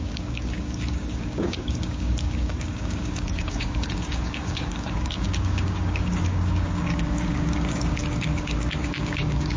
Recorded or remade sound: remade